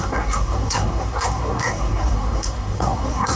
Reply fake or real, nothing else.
fake